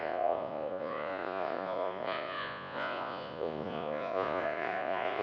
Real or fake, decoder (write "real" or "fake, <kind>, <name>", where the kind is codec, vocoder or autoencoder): fake, vocoder, Vocos